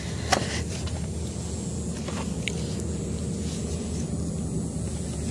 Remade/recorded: recorded